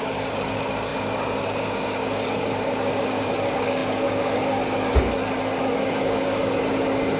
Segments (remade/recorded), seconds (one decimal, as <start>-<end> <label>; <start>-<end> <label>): 0.0-5.1 remade; 5.1-5.6 recorded; 5.6-7.2 remade